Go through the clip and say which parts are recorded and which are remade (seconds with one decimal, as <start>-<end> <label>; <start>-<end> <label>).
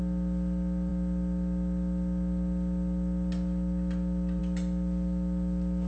0.0-5.9 recorded